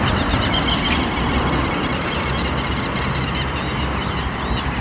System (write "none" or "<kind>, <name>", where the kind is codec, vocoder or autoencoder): none